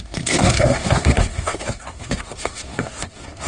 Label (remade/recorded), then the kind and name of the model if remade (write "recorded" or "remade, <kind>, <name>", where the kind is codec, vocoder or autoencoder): remade, codec, SNAC